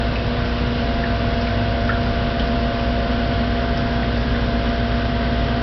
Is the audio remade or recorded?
recorded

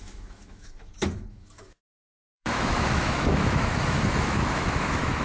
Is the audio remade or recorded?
remade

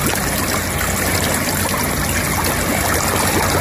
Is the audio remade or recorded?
recorded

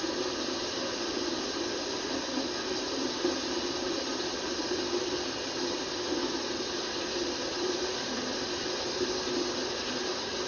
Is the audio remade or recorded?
recorded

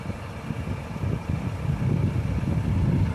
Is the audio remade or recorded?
recorded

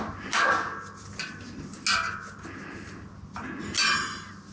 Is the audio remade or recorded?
recorded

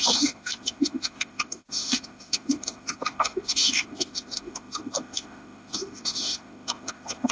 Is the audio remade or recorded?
remade